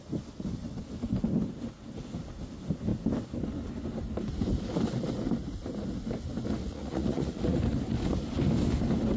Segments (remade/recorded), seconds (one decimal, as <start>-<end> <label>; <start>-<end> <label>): 0.0-6.6 recorded; 6.6-7.6 remade; 7.6-9.2 recorded